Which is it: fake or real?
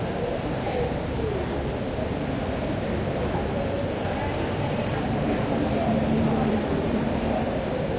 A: fake